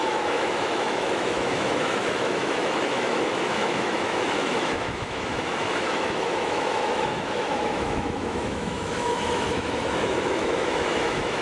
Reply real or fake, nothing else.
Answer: fake